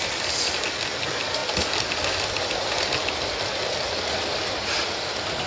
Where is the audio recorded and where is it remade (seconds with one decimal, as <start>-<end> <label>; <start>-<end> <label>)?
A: 0.0-5.5 recorded